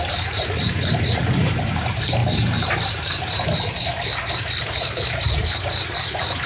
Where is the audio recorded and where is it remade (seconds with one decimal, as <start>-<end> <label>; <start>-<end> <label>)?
0.0-6.5 remade